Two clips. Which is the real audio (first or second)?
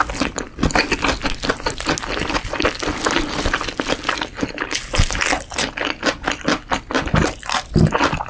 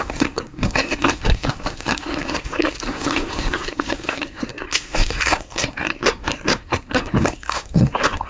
first